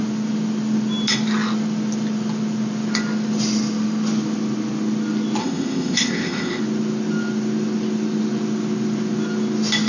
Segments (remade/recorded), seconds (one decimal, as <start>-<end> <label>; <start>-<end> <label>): 0.0-5.4 recorded; 5.4-6.6 remade; 6.6-9.9 recorded